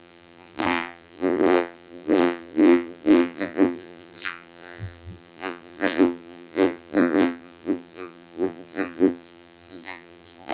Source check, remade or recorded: remade